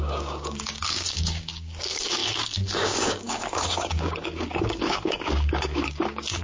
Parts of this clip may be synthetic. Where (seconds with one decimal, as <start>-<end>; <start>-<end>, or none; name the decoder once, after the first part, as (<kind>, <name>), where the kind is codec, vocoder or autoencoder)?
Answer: 0.0-6.4 (codec, DAC)